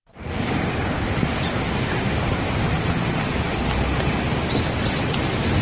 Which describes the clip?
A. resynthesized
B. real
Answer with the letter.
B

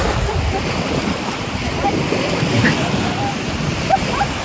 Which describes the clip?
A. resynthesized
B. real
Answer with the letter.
B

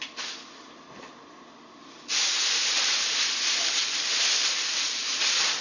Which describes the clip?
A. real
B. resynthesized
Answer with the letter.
A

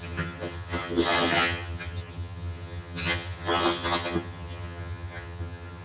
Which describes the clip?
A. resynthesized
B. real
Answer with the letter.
A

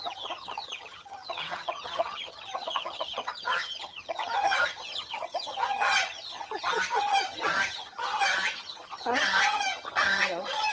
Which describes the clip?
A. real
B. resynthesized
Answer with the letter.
B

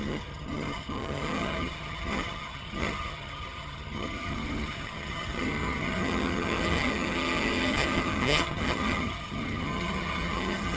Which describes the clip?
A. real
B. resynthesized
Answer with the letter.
B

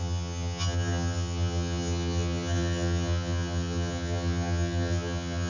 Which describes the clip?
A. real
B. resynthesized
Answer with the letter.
B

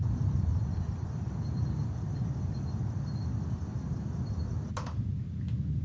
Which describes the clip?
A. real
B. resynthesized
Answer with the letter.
A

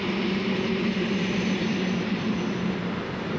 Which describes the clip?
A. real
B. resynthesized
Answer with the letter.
A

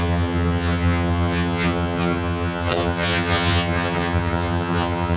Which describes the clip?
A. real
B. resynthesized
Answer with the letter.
B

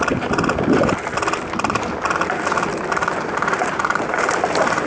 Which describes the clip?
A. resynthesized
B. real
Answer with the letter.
B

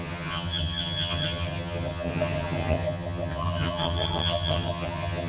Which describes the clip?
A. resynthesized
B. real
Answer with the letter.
A